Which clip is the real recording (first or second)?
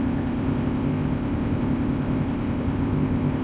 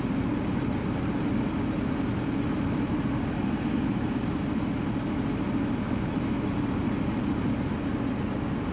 second